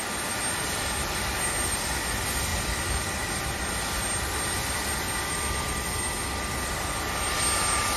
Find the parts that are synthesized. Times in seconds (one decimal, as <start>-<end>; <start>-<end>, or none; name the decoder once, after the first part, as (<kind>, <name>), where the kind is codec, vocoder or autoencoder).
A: none